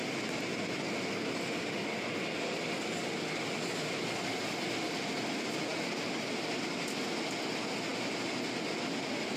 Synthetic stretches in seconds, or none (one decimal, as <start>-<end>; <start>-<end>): none